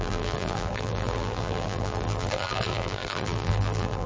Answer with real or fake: fake